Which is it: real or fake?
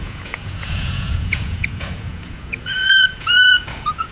fake